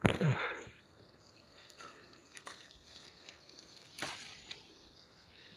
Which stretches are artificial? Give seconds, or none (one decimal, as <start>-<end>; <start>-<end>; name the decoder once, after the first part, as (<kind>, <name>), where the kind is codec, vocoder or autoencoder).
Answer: 0.0-3.9 (codec, SNAC); 4.7-5.6